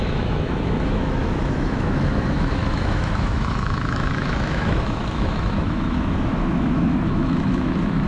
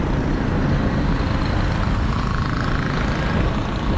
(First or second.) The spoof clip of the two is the first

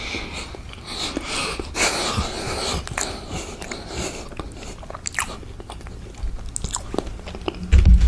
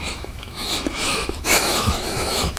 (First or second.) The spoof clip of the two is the second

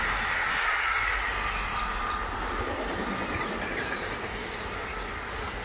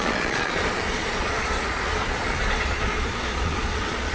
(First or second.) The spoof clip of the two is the second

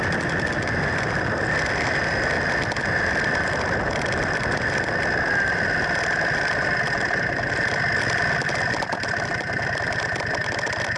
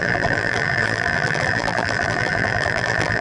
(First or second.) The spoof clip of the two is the second